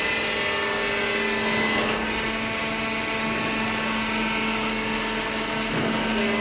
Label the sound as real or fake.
real